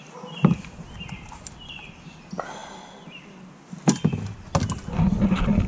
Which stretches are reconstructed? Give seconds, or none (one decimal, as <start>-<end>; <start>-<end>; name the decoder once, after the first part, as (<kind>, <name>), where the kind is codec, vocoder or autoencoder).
none